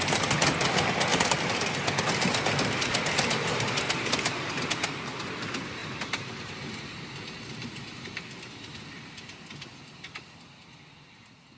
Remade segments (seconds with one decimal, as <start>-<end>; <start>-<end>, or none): 1.1-1.6; 5.8-7.1; 7.6-8.7